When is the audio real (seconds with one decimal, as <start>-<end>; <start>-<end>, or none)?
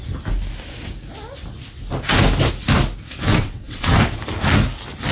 0.0-3.3; 4.0-5.1